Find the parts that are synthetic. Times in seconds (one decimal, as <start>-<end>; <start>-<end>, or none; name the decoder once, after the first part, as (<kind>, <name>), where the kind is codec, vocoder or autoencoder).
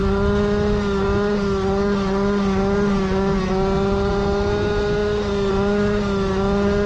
none